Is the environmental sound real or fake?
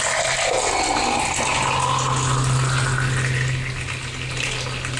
real